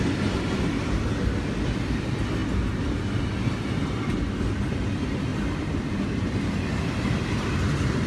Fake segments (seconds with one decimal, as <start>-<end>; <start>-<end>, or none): none